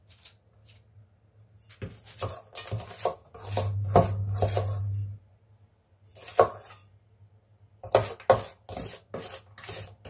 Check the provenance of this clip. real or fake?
real